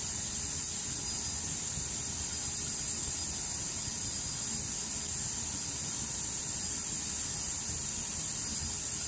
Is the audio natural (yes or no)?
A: yes